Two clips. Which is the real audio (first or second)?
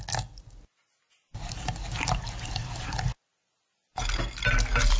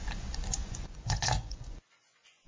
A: first